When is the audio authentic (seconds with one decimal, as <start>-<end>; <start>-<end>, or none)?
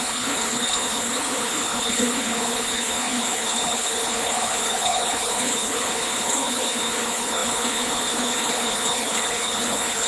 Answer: none